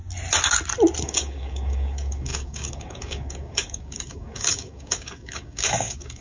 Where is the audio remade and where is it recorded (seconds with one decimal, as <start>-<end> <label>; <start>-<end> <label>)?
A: 0.0-1.0 recorded; 1.0-6.2 remade